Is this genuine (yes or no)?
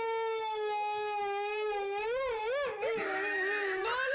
yes